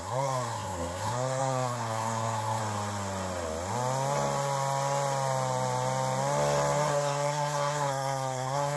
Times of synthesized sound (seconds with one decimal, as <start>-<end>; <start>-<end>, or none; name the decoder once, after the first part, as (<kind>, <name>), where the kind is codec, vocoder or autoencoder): 0.0-2.6 (codec, SNAC); 6.9-8.8